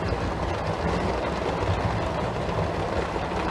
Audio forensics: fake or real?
real